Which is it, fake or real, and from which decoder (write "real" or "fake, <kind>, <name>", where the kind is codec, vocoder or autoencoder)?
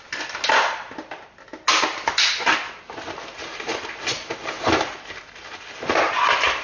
real